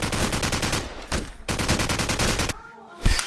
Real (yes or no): yes